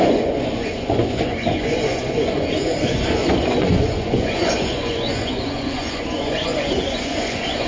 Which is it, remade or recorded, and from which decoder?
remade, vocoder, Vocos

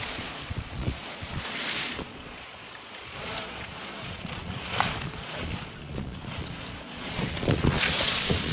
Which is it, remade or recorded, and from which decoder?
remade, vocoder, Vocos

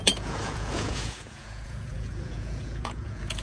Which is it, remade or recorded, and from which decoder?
remade, vocoder, Vocos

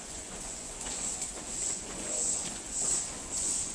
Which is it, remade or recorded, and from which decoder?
remade, vocoder, Vocos